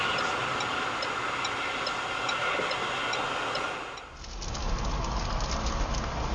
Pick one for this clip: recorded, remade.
recorded